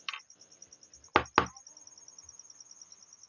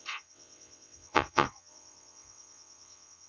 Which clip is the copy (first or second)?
second